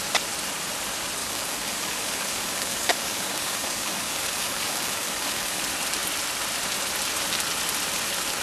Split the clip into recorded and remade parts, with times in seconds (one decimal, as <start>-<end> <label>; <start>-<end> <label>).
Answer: 0.0-1.2 recorded; 1.2-5.6 remade; 5.6-8.4 recorded